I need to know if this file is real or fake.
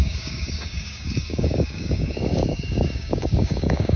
fake